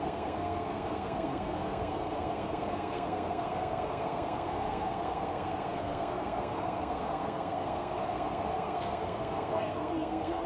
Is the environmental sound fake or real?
fake